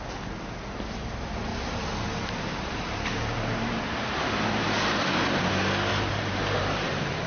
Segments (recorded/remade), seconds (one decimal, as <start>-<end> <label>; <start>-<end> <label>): 0.0-1.5 recorded; 1.5-5.5 remade; 5.5-5.9 recorded; 5.9-7.3 remade